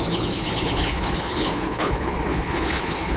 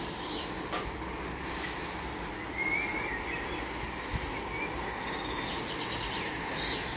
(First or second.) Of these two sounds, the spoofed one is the first